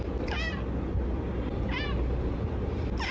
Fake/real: real